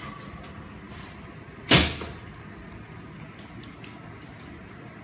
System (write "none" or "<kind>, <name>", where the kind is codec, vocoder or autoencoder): none